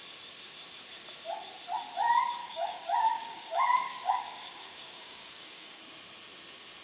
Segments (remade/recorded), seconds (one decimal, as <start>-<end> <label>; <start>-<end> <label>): 0.0-2.4 recorded; 2.4-5.8 remade; 5.8-6.8 recorded